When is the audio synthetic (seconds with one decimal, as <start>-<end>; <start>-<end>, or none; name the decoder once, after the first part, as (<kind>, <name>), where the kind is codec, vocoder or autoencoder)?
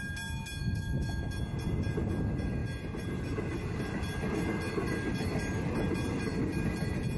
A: 0.6-1.4 (autoencoder, DAC-VAE)